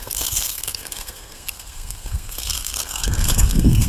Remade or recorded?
remade